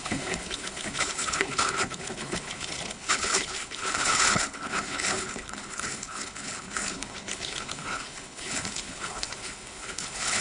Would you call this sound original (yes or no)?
no